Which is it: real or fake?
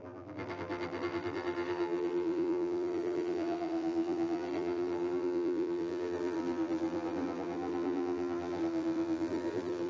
fake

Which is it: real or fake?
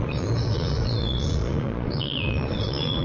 fake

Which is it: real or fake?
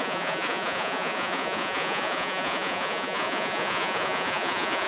fake